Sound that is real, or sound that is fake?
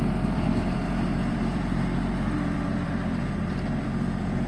fake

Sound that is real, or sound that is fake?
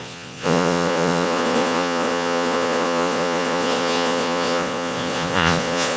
fake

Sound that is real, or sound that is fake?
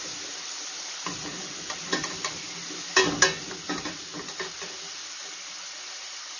real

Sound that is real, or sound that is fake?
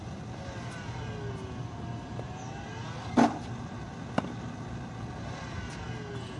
real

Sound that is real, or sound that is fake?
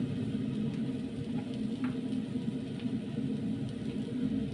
real